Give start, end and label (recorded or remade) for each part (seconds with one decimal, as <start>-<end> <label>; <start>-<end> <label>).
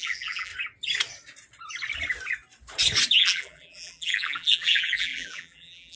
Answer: 0.0-0.5 remade; 0.5-3.1 recorded; 3.1-6.0 remade